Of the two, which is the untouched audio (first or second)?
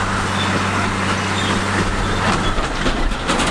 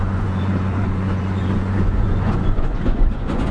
first